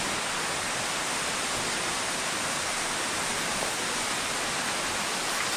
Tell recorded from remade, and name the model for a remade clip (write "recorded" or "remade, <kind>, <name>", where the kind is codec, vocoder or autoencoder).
recorded